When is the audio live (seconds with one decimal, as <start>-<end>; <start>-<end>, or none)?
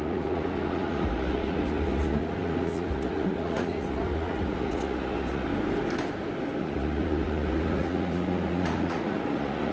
5.5-6.6